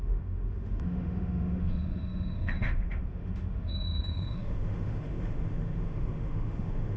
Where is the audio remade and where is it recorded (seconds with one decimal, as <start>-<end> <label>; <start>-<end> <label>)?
0.0-7.0 remade